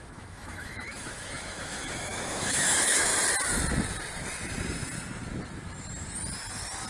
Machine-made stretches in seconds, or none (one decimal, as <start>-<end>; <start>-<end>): 0.0-3.1